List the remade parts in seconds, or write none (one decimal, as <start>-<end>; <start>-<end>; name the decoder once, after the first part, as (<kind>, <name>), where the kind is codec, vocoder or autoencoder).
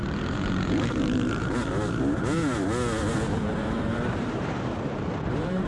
0.0-1.5 (vocoder, BigVGAN v2); 3.5-5.7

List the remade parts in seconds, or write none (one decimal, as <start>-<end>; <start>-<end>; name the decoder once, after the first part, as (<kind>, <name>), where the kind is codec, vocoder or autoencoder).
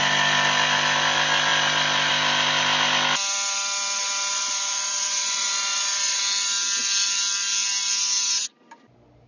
4.3-6.2 (vocoder, Vocos)